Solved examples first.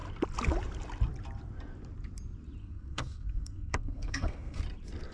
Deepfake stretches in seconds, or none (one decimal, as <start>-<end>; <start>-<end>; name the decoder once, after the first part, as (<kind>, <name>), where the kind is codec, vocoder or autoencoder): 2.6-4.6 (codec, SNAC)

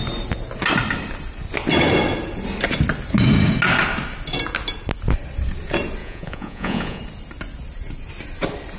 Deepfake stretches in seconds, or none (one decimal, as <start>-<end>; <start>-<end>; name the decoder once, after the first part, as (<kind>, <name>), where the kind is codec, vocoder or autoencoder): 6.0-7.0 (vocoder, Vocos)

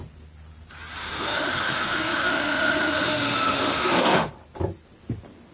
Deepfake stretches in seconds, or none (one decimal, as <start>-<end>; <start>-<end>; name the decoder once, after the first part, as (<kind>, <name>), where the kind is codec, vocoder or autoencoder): 1.0-4.3 (autoencoder, DAC-VAE)

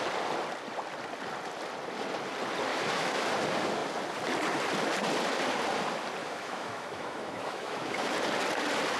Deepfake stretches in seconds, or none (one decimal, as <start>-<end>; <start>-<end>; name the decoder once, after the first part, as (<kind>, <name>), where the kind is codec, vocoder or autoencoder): 2.7-3.3 (autoencoder, DAC-VAE); 6.2-8.1